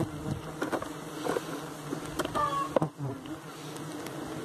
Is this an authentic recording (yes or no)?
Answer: yes